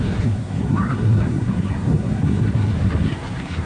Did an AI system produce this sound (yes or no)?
yes